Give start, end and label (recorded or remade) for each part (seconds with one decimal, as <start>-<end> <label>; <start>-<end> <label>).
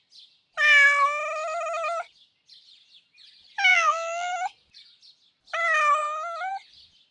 0.0-3.7 recorded; 3.7-4.3 remade; 4.3-7.1 recorded